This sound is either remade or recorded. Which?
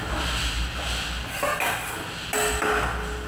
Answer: recorded